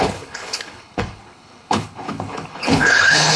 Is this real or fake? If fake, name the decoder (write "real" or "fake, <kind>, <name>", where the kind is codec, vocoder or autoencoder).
fake, codec, HILCodec